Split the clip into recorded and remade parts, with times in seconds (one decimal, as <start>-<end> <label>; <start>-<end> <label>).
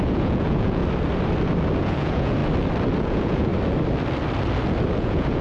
0.0-0.8 remade; 0.8-1.8 recorded; 1.8-2.4 remade; 2.4-3.0 recorded; 3.0-3.5 remade; 3.5-5.0 recorded; 5.0-5.4 remade